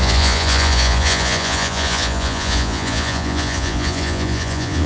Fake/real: fake